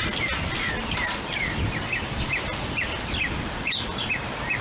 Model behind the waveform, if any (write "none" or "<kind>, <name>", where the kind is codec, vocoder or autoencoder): none